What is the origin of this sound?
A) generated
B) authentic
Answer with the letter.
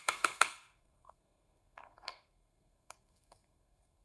A